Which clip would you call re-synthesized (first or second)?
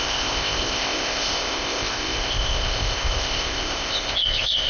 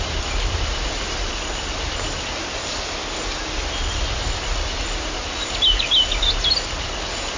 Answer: first